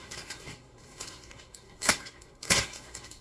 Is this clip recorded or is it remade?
remade